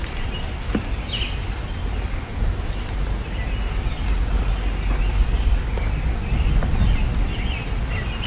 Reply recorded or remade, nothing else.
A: recorded